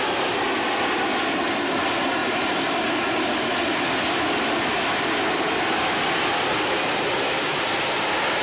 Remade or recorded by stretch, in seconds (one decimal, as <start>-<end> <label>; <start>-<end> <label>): 0.0-8.4 recorded